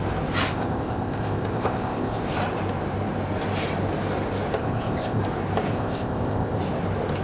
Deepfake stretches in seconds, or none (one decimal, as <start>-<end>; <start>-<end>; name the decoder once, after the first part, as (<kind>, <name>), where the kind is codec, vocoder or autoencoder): 0.5-2.2 (codec, ZipCodec); 4.6-5.2; 5.7-6.6